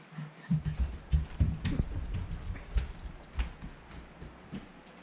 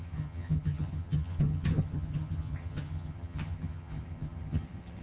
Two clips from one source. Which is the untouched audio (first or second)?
first